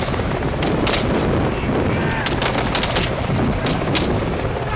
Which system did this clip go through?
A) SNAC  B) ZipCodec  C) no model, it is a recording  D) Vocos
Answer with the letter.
C